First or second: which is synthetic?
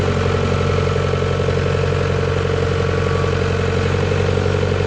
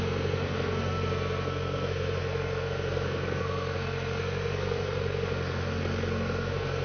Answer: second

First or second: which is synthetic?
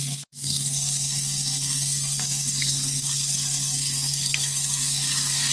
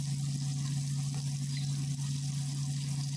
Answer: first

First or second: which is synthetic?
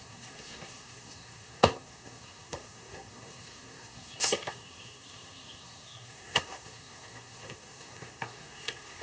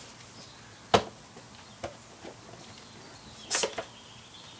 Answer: first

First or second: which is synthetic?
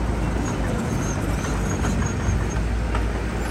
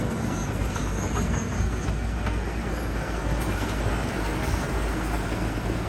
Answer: second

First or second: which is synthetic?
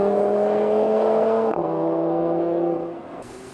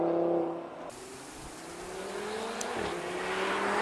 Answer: first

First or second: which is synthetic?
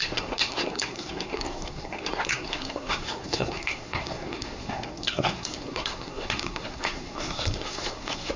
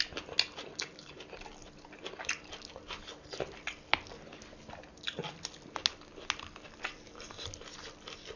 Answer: first